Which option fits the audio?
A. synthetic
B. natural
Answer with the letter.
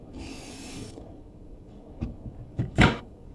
A